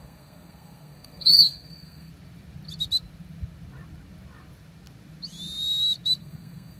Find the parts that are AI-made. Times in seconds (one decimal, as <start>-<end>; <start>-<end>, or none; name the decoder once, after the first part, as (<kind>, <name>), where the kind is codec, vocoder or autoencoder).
0.0-2.1 (codec, SNAC); 6.2-6.8